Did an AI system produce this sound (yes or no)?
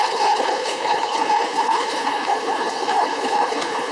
yes